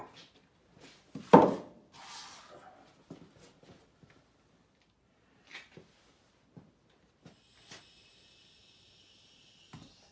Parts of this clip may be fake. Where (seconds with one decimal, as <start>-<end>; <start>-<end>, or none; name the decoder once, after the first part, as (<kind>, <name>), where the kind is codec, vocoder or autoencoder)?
none